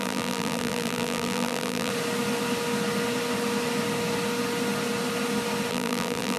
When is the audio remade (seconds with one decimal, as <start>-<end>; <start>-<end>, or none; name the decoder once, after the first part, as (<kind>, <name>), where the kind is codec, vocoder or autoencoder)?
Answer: 0.0-1.9 (vocoder, BigVGAN v2); 5.7-6.4